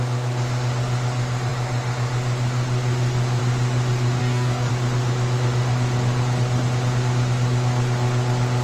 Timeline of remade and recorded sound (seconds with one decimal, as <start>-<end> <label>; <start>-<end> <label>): 0.0-4.2 recorded; 4.2-4.7 remade; 4.7-8.6 recorded